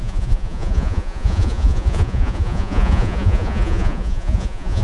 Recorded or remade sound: remade